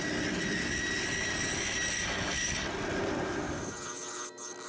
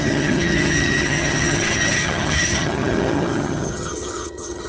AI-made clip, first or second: second